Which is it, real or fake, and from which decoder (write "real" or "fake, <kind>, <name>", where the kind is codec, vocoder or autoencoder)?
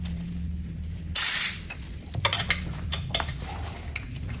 real